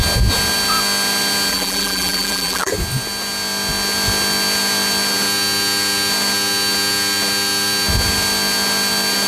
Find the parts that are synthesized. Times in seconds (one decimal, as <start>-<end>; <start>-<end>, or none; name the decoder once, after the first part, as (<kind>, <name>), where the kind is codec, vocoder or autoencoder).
1.5-2.7 (vocoder, BigVGAN v2)